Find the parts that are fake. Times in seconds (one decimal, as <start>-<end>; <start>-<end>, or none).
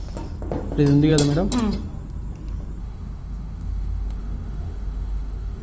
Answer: 2.8-5.6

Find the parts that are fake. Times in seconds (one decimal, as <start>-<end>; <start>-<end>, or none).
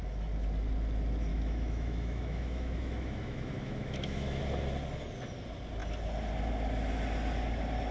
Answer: 1.3-4.4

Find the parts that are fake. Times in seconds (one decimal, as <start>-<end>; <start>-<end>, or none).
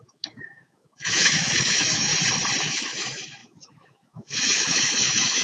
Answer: 0.0-2.1; 2.6-5.4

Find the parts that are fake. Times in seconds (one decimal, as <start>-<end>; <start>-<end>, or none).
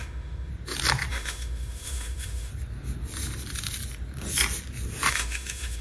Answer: 0.0-0.5; 1.1-2.5; 5.1-5.8